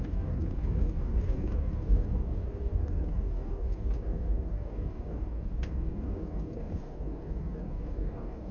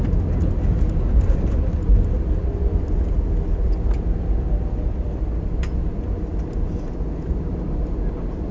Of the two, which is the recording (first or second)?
second